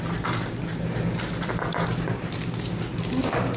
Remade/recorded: remade